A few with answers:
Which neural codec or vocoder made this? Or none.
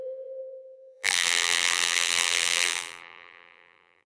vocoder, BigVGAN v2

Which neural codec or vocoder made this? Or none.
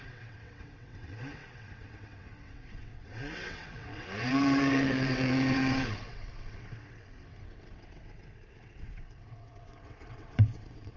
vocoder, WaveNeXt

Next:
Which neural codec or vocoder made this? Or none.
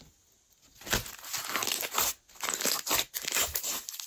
none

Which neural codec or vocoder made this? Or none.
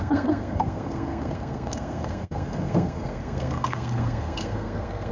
codec, SNAC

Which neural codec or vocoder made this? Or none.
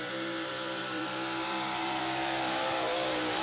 vocoder, BigVGAN v2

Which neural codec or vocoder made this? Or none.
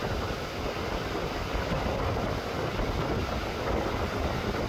none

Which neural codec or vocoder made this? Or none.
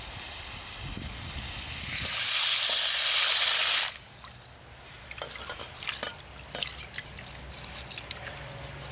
none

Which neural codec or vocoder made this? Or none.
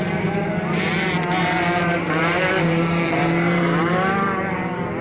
vocoder, BigVGAN v2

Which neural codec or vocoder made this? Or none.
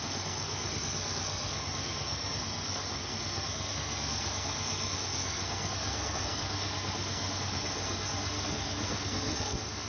codec, SNAC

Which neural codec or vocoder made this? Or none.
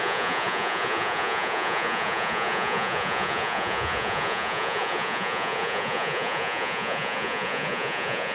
vocoder, Vocos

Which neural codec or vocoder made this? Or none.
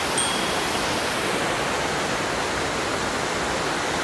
none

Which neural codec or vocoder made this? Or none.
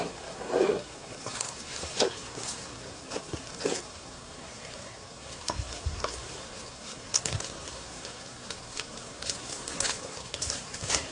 codec, SNAC